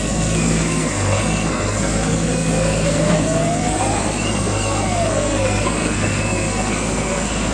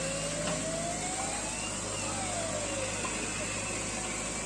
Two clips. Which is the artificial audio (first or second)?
first